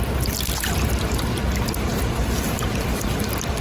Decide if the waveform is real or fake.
real